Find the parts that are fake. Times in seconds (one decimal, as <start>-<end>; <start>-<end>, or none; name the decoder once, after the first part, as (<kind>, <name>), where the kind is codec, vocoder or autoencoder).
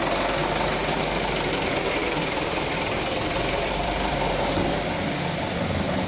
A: 0.4-1.0 (vocoder, BigVGAN v2); 2.0-6.1